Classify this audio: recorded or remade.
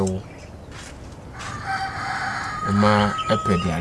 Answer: recorded